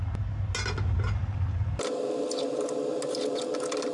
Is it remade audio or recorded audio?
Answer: recorded